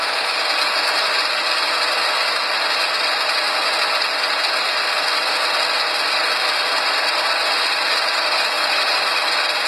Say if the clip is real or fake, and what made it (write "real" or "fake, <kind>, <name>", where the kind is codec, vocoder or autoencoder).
real